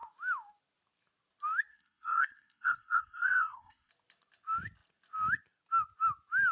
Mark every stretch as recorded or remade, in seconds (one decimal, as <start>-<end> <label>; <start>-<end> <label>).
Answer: 0.0-1.7 recorded; 1.7-3.9 remade; 3.9-6.5 recorded